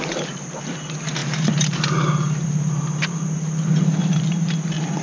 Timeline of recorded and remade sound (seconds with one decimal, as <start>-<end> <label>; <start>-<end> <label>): 0.0-5.0 remade